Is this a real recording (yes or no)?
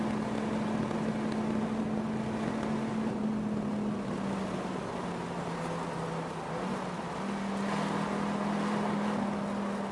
yes